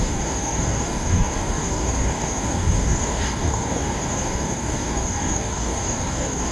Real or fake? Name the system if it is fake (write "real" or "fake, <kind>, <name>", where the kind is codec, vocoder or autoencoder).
fake, codec, DAC